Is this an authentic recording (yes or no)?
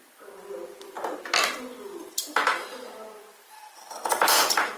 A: yes